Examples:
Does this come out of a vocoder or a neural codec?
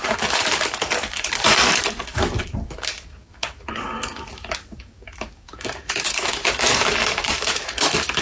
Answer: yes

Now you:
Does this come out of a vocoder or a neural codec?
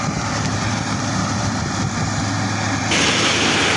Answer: no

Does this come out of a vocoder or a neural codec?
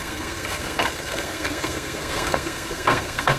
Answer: yes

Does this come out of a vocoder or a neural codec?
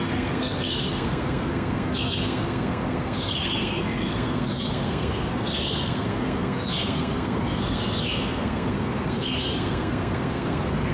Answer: yes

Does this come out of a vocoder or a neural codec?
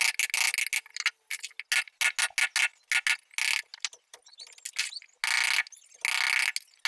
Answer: no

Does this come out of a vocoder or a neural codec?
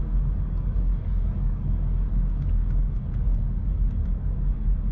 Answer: yes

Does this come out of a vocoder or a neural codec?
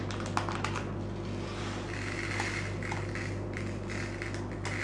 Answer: no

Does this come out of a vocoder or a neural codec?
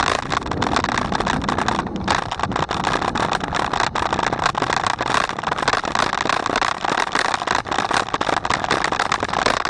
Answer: no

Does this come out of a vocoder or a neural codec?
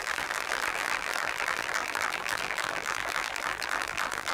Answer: yes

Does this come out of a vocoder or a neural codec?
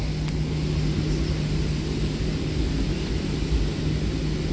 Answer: no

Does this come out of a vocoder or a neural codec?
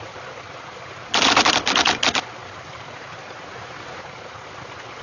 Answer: no